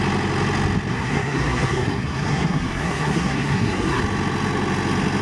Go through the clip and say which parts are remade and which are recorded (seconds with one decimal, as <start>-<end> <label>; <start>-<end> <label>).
0.0-0.9 recorded; 0.9-4.0 remade; 4.0-5.2 recorded